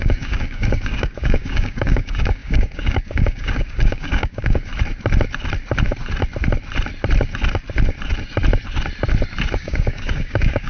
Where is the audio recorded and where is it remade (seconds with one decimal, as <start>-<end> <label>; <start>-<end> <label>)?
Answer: 0.0-4.7 remade; 4.7-9.5 recorded; 9.5-10.7 remade